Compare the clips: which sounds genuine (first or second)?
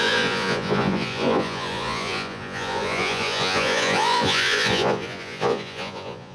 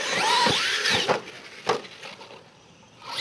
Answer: second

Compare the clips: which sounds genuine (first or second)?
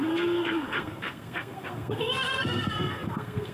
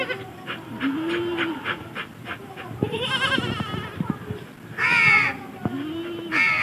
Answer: second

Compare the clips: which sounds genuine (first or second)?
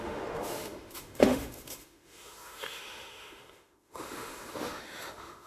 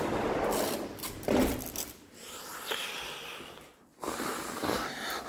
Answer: second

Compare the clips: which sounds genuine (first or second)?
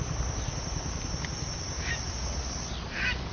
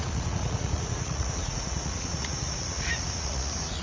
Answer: first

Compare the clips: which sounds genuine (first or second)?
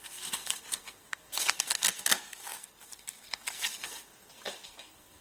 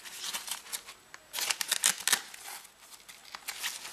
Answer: second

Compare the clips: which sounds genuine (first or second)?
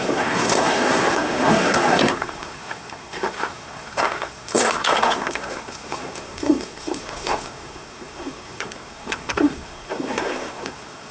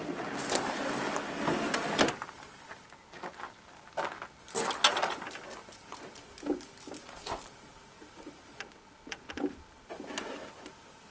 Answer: second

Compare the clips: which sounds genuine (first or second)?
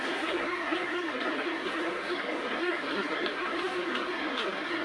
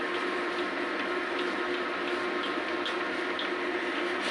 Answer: second